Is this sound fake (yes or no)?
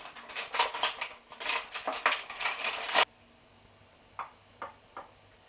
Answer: no